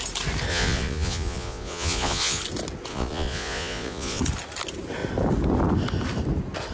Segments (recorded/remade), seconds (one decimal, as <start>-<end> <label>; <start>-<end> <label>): 0.0-0.5 recorded; 0.5-2.4 remade; 2.4-2.9 recorded; 2.9-4.2 remade; 4.2-6.7 recorded